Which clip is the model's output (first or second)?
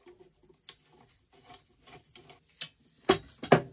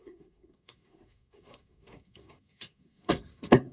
second